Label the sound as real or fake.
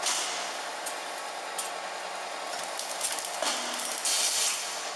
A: real